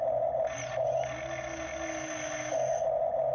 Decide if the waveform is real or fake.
real